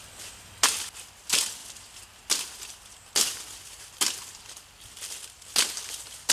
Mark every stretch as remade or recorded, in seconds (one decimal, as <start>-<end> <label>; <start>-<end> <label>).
0.0-6.3 recorded